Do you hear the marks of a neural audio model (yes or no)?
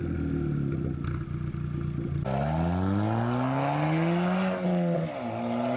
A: no